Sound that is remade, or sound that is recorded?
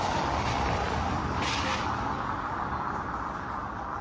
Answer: recorded